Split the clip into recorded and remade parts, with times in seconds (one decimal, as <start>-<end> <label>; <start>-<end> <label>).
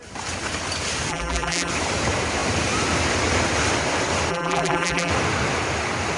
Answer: 0.0-1.1 recorded; 1.1-1.7 remade; 1.7-4.3 recorded; 4.3-5.1 remade; 5.1-6.2 recorded